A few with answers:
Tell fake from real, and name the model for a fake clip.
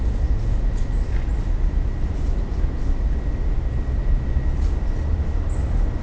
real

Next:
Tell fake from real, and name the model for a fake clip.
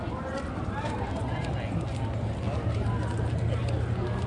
real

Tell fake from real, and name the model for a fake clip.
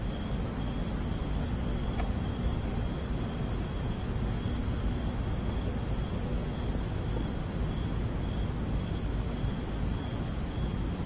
real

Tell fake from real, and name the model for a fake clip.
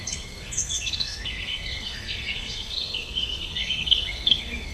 fake, codec, SNAC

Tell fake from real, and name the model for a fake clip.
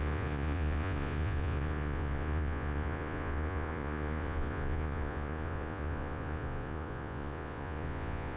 fake, vocoder, Vocos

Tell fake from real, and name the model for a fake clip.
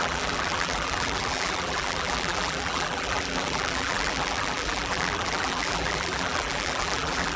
fake, vocoder, BigVGAN v2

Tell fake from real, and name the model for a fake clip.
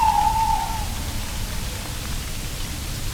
real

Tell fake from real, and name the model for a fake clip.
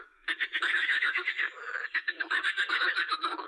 fake, codec, DAC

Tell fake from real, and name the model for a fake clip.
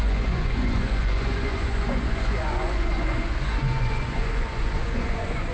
fake, vocoder, Vocos